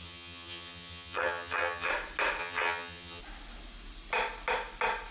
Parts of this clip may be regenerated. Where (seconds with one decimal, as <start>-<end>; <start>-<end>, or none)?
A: 0.0-1.9; 2.4-3.2